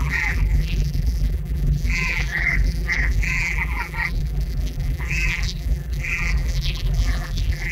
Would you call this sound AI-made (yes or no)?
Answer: yes